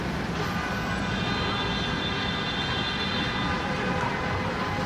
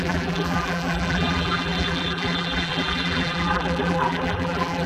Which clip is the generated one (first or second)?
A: second